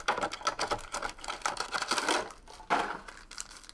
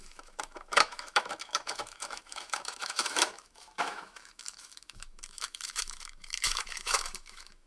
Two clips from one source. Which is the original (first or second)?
first